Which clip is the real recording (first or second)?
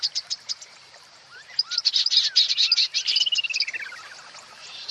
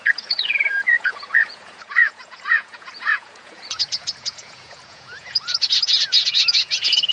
first